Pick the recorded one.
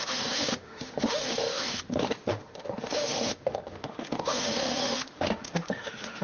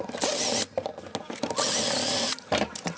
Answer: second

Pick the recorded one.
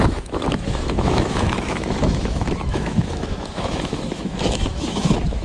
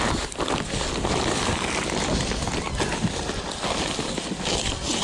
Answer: second